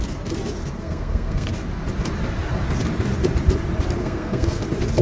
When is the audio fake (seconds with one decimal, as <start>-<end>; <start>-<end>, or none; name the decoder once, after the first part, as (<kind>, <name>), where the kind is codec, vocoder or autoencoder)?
0.8-1.5 (codec, SNAC); 4.0-4.6